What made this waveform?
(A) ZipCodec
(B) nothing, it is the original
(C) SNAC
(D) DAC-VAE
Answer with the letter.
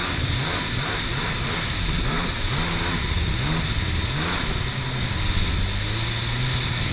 B